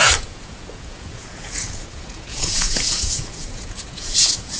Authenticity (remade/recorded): remade